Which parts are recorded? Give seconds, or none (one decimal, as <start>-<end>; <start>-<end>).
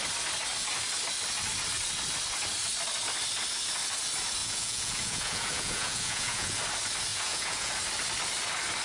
0.0-4.4; 6.6-7.1; 7.7-8.8